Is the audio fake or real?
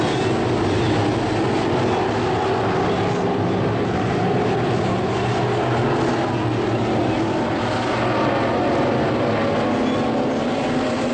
real